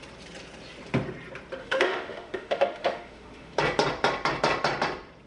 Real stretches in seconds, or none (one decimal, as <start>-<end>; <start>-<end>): 0.0-1.6; 3.6-5.3